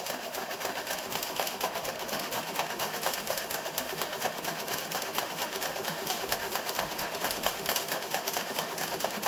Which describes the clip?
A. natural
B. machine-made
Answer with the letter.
B